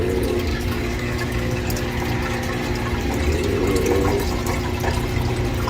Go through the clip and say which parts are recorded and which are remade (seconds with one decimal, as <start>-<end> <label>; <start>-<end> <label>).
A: 0.0-0.5 recorded; 0.5-1.6 remade; 1.6-5.7 recorded